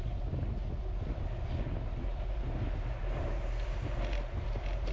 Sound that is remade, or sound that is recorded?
recorded